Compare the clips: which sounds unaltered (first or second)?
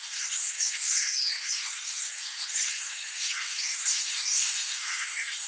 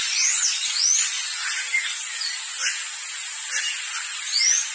second